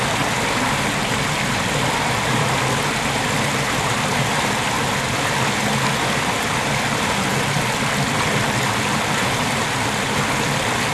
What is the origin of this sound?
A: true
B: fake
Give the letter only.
A